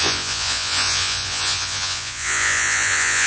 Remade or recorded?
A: remade